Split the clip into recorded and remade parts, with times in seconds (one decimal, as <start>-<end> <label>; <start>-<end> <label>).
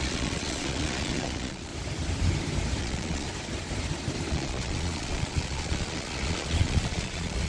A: 0.0-1.7 remade; 1.7-2.8 recorded; 2.8-3.3 remade; 3.3-4.3 recorded; 4.3-7.5 remade